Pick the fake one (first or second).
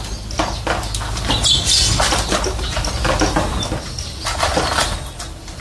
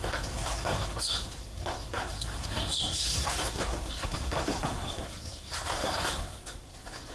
second